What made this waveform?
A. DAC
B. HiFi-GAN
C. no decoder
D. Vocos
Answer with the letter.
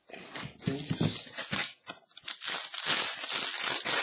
C